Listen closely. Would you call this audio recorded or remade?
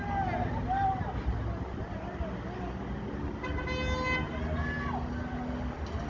recorded